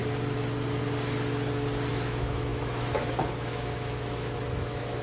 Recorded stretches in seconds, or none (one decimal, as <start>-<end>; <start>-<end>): 0.0-1.9